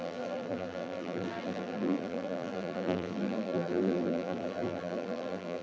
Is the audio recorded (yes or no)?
no